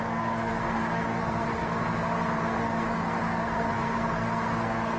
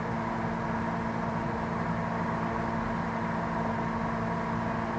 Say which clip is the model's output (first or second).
first